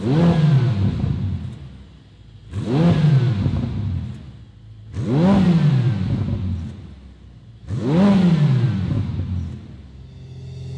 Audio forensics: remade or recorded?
recorded